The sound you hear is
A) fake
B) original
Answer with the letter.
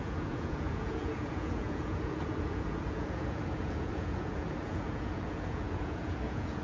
A